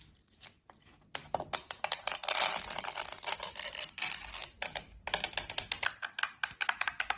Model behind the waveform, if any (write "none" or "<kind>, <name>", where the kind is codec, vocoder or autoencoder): none